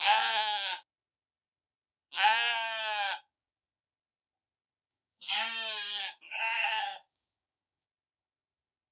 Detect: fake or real fake